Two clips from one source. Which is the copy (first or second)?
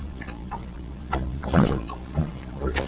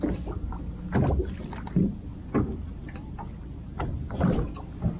first